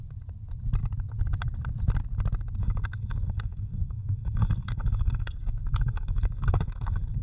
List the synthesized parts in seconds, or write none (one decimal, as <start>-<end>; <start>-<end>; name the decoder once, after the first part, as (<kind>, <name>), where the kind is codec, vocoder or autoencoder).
2.6-7.2 (codec, SNAC)